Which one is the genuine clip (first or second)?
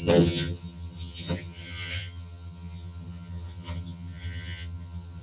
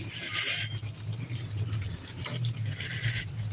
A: second